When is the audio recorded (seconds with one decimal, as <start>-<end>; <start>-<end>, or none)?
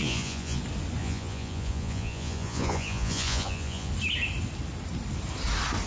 0.6-1.0; 3.9-5.9